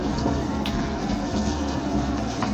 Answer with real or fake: fake